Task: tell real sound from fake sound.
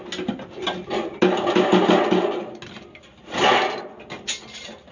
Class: real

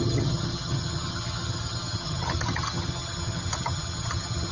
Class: fake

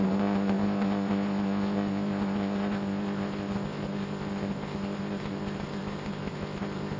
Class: fake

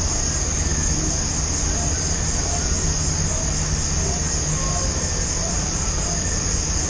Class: real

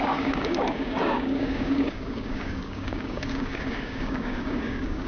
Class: fake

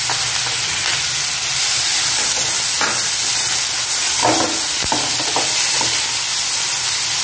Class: real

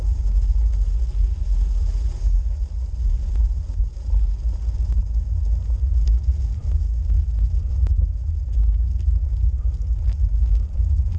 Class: real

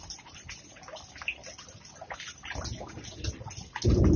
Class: real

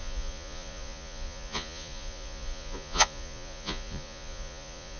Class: fake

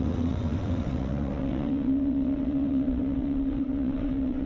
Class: fake